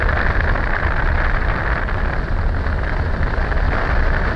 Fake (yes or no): no